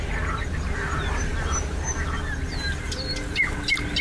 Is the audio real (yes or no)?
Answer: yes